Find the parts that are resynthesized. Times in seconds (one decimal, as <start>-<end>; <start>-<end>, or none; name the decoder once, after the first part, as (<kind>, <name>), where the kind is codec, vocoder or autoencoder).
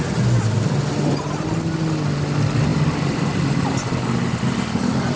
none